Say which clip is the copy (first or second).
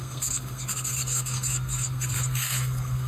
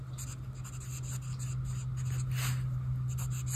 first